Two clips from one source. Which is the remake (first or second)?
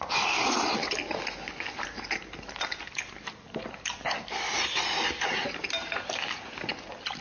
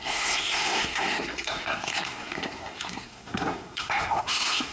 second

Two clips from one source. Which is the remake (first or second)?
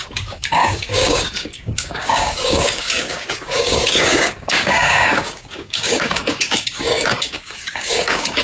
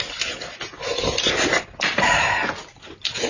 first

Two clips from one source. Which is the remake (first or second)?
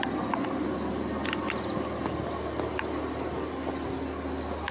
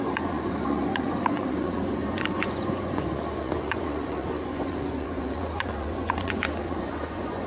second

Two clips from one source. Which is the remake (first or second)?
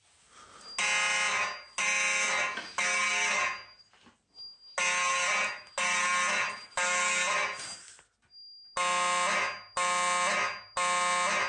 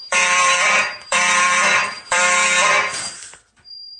second